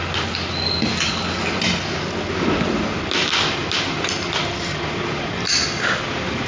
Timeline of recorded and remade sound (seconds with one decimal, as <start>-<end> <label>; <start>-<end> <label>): 0.0-6.5 recorded